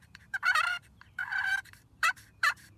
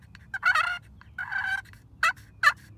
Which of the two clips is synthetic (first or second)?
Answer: first